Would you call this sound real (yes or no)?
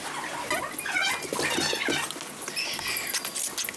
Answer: yes